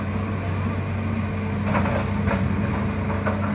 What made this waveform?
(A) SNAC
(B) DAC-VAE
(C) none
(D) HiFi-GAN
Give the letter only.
C